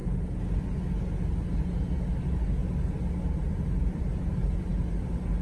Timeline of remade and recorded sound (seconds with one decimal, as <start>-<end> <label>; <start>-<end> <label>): 0.0-2.1 recorded; 2.1-2.6 remade; 2.6-3.2 recorded; 3.2-4.7 remade; 4.7-5.4 recorded